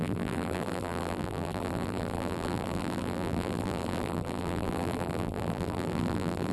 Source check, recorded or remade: remade